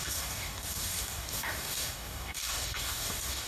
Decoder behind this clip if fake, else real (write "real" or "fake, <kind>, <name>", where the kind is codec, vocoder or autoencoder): fake, codec, DAC